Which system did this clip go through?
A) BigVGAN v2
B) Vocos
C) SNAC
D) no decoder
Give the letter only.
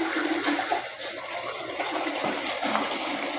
D